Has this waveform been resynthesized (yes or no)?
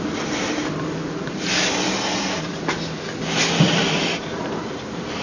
no